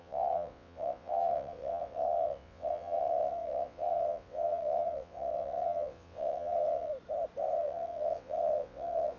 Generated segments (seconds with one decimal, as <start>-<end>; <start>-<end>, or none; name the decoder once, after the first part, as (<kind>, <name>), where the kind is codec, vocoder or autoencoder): 0.0-6.9 (vocoder, WaveNeXt); 7.6-9.2